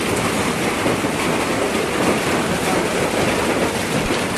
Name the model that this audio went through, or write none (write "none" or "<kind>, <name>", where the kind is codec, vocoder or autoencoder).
none